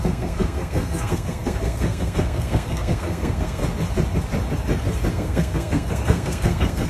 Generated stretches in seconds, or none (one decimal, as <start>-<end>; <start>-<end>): 0.0-3.6; 5.1-6.9